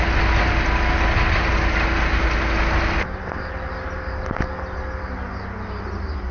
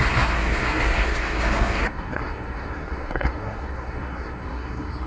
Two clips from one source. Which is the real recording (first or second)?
first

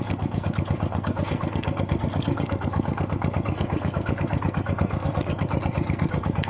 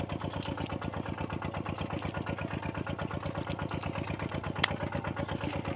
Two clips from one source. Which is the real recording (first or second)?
second